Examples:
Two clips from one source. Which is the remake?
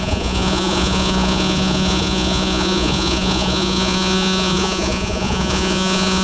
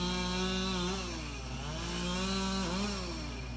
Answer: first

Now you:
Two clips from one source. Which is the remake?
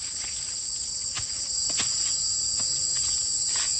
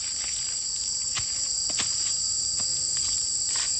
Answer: first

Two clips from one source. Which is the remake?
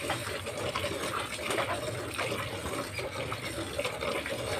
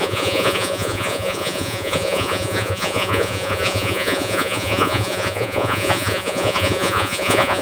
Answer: second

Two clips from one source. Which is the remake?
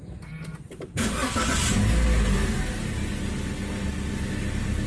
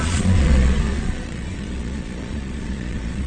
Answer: second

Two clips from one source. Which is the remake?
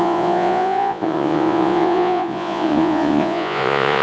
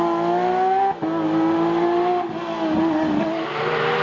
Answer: first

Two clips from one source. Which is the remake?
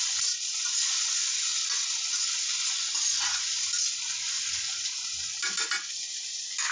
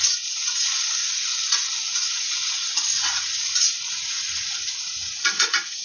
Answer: second